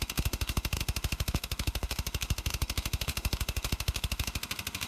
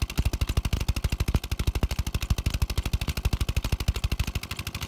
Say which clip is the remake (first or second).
first